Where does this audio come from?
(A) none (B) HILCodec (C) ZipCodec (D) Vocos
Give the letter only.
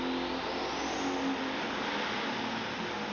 A